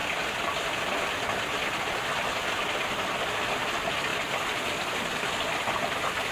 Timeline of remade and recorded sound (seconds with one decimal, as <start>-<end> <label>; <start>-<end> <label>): 0.0-4.1 recorded; 4.1-5.8 remade; 5.8-6.3 recorded